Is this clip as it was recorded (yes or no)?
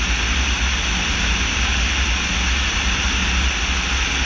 yes